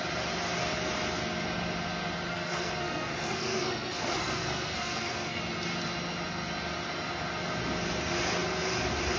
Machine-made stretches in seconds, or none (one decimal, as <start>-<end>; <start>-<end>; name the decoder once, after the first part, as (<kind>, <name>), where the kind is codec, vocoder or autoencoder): 2.3-5.4 (codec, SNAC)